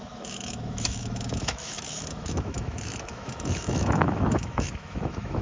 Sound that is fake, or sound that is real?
fake